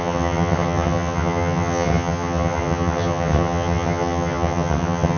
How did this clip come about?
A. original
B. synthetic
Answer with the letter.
B